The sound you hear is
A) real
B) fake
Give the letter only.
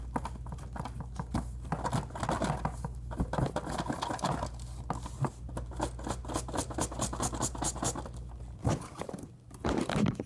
A